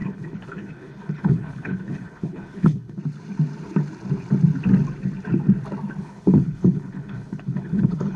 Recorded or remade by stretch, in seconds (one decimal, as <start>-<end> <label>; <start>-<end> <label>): 0.0-3.0 remade; 3.0-6.0 recorded; 6.0-8.2 remade